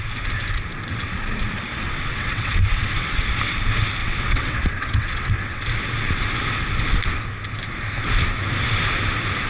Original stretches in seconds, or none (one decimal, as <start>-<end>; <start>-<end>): 0.0-1.7; 3.1-4.0; 5.6-9.5